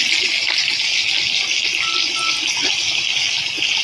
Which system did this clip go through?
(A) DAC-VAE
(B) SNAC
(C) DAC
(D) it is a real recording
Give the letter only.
D